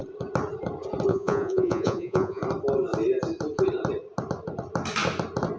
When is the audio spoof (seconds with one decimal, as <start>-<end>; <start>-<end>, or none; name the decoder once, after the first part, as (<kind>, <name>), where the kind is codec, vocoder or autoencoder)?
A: 1.1-2.4 (vocoder, Vocos)